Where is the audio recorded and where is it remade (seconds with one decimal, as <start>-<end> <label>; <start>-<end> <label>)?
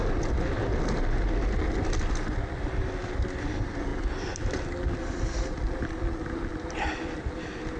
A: 0.0-7.8 recorded